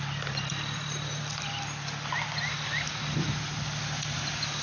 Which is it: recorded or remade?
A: recorded